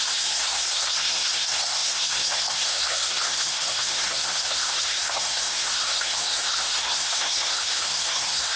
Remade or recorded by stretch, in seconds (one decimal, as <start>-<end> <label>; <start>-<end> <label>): 0.0-8.6 remade